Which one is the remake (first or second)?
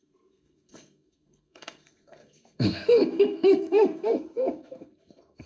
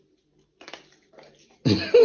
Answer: first